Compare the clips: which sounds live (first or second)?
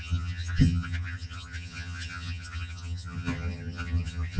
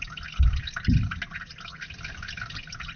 second